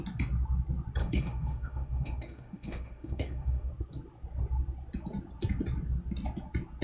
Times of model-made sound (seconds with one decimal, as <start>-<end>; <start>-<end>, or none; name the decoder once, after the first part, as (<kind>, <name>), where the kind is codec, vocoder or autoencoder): 1.0-3.7 (autoencoder, DAC-VAE)